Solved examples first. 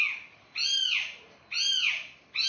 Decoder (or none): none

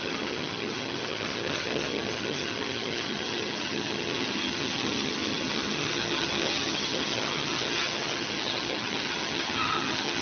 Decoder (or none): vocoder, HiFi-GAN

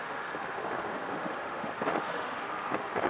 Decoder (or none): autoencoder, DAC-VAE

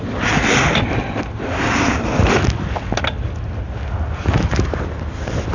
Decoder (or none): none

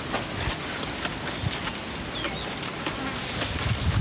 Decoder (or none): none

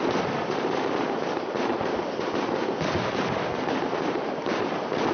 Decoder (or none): none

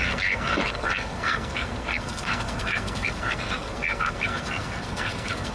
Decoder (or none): codec, SNAC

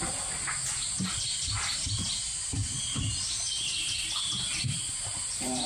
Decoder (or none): none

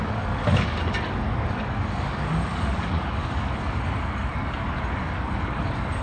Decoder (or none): codec, DAC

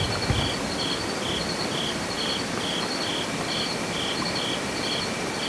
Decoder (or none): none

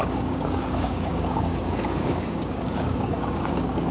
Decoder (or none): codec, DAC